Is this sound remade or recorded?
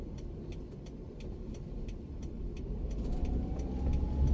recorded